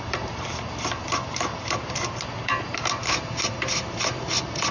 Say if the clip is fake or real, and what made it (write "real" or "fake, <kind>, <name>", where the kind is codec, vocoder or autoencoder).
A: fake, vocoder, BigVGAN v2